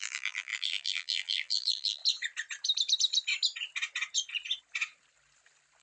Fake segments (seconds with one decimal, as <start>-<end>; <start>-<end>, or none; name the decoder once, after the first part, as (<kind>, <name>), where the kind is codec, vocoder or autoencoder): 0.0-2.0 (vocoder, BigVGAN v2)